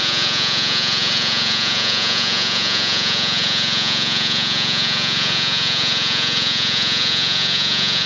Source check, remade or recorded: remade